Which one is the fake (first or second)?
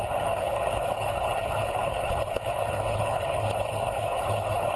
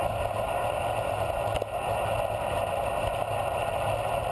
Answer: first